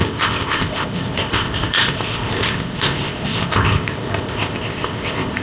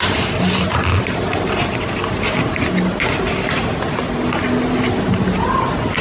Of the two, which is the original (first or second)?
second